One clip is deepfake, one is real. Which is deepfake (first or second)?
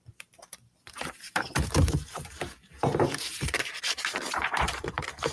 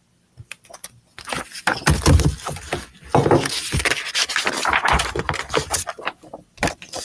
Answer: first